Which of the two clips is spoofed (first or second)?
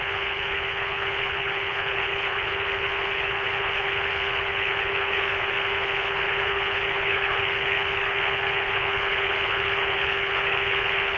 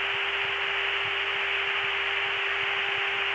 first